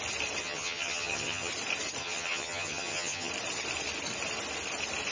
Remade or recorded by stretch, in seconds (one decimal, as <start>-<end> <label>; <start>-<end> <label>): 0.0-0.4 recorded; 0.4-1.5 remade; 1.5-2.0 recorded; 2.0-3.3 remade; 3.3-5.1 recorded